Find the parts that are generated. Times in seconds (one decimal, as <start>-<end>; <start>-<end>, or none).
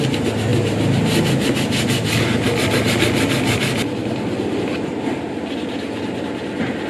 none